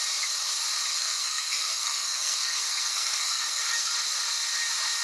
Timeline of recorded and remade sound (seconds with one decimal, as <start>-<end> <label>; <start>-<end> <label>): 0.0-0.9 recorded; 0.9-3.9 remade; 3.9-5.0 recorded